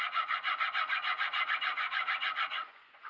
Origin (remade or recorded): remade